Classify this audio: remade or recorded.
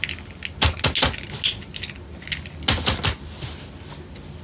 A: recorded